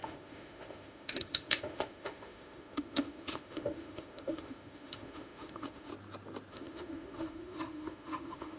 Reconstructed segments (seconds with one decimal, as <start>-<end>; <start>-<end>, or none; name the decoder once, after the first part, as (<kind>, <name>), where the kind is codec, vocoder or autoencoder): 0.0-5.9 (autoencoder, DAC-VAE); 6.5-8.6